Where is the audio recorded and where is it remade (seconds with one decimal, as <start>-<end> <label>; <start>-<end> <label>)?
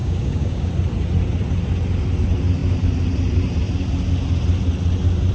0.0-0.7 remade; 0.7-5.3 recorded